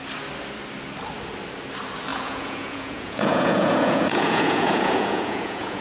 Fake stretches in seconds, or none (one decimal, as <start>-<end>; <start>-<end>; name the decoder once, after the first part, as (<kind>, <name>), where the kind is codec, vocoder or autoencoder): 2.1-5.8 (vocoder, Vocos)